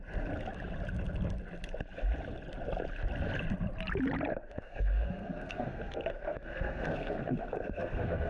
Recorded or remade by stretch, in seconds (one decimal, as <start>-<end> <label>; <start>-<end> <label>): 0.0-4.3 recorded; 4.3-8.3 remade